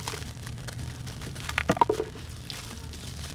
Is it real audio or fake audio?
real